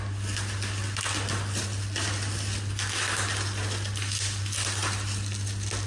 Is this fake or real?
real